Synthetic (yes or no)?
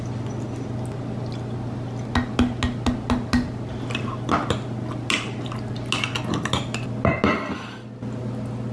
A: no